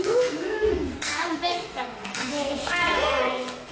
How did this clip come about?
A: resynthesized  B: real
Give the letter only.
A